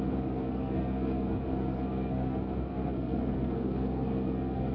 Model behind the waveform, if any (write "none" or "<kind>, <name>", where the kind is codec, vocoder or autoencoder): codec, SNAC